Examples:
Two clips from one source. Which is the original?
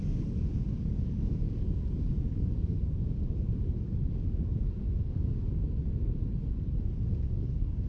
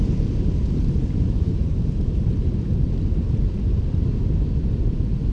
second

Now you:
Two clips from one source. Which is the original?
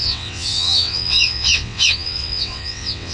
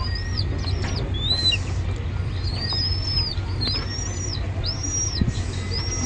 second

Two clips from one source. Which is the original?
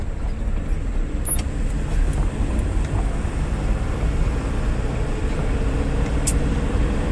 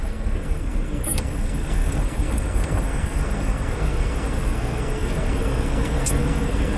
first